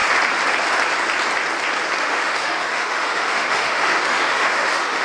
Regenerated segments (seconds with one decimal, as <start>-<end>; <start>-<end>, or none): 2.0-5.0